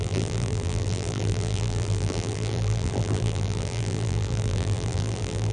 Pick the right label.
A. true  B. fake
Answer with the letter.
B